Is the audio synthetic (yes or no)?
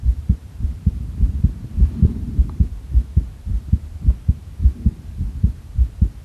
yes